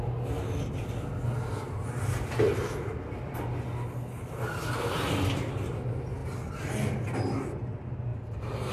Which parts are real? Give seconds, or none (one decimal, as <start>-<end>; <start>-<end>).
0.0-8.7